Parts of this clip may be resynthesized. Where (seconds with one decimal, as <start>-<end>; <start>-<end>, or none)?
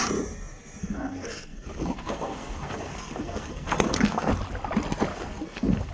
0.8-4.3; 5.1-5.9